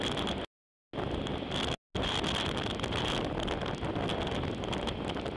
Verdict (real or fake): real